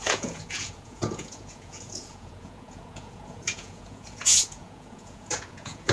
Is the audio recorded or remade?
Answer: remade